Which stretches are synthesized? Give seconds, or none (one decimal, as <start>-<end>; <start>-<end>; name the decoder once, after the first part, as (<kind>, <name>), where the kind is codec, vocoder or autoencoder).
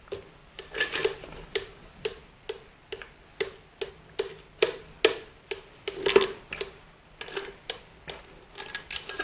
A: none